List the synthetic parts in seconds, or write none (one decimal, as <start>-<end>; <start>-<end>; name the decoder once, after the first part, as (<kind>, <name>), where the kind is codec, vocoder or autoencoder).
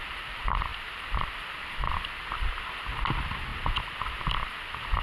none